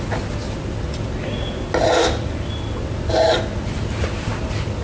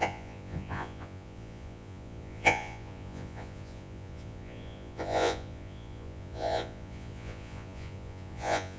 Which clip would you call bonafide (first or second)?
first